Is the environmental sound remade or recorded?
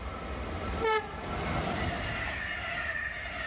recorded